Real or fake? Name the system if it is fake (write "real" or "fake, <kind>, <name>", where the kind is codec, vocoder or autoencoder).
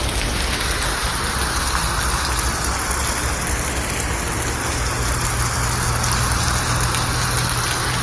real